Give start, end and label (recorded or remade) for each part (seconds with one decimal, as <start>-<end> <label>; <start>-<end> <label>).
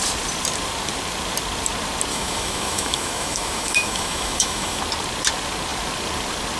0.0-2.1 recorded; 2.1-4.8 remade; 4.8-6.6 recorded